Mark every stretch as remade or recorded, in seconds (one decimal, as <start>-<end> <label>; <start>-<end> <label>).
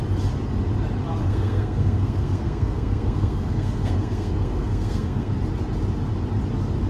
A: 0.0-1.2 recorded; 1.2-5.3 remade; 5.3-6.9 recorded